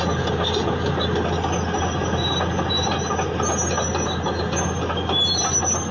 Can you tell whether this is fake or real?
real